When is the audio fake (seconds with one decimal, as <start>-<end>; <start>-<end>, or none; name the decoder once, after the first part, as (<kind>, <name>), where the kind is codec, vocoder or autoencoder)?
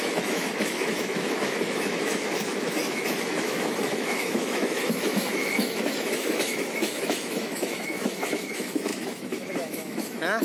0.0-10.4 (autoencoder, DAC-VAE)